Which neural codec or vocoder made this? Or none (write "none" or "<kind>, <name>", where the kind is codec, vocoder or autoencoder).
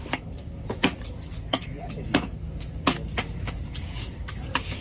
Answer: codec, DAC